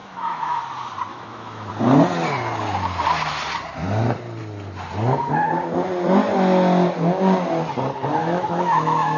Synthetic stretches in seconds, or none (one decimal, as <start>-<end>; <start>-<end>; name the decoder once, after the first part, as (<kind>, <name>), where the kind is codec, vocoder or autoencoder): 0.0-0.6 (autoencoder, DAC-VAE); 1.1-1.7; 8.2-9.2